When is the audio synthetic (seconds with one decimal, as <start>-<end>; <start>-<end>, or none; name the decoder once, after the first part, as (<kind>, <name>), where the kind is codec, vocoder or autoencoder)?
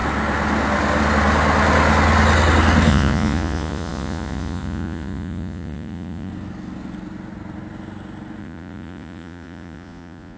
2.9-6.3 (vocoder, Vocos); 8.4-10.4